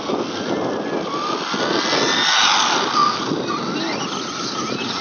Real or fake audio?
real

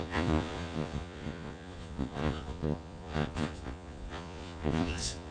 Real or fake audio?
fake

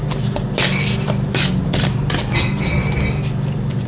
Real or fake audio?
real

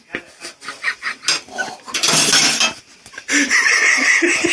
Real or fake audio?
real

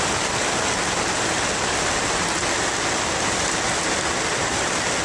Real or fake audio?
real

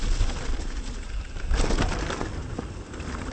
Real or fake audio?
real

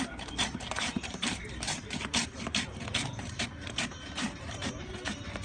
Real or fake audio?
fake